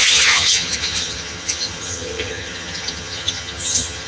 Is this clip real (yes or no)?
no